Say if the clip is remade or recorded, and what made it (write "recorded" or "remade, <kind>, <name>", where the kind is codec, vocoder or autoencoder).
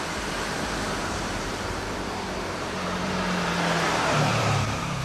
remade, vocoder, BigVGAN v2